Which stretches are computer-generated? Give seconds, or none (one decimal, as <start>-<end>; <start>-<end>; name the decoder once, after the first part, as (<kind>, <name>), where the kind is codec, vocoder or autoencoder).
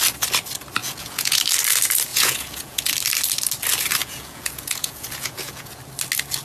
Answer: 0.8-1.4 (vocoder, Vocos); 2.1-2.9; 4.0-5.8